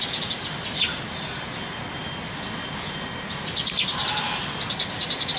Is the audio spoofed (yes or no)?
no